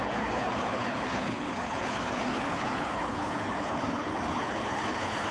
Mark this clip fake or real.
fake